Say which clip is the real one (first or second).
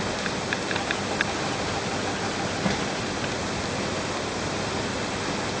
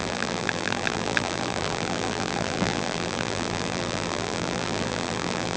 first